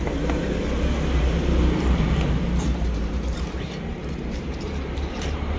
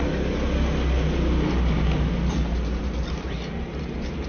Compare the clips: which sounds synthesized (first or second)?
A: first